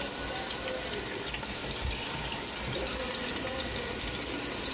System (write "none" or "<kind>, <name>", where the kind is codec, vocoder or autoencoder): none